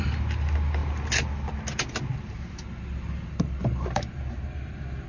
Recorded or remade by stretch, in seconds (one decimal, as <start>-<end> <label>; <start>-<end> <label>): 0.0-3.6 recorded; 3.6-4.2 remade; 4.2-5.1 recorded